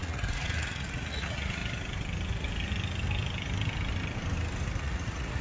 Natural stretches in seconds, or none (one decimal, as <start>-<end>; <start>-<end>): 1.6-4.8